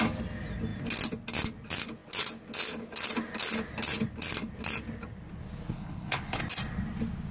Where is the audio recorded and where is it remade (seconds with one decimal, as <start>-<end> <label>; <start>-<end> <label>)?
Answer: 0.0-5.7 recorded; 5.7-6.4 remade; 6.4-7.3 recorded